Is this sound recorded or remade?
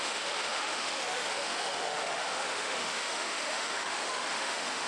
remade